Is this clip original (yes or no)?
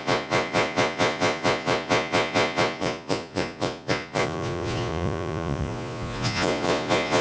no